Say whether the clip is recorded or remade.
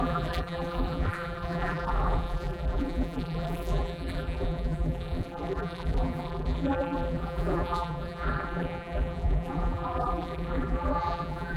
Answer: remade